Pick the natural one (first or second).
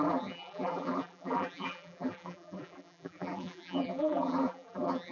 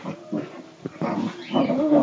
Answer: second